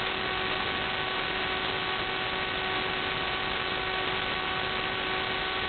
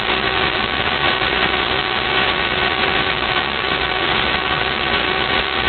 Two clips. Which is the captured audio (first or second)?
first